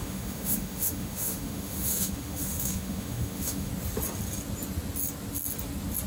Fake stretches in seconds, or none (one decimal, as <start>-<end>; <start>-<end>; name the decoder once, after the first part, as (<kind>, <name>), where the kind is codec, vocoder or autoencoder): 0.0-3.7 (autoencoder, DAC-VAE)